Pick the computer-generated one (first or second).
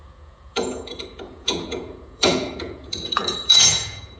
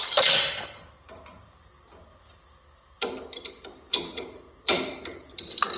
first